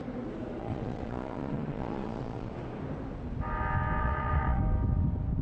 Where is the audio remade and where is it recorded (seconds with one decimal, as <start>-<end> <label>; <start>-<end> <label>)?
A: 0.0-0.6 recorded; 0.6-2.5 remade; 2.5-4.0 recorded; 4.0-4.6 remade; 4.6-5.4 recorded